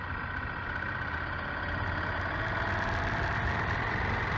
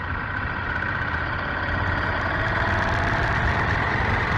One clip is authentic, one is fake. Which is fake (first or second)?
second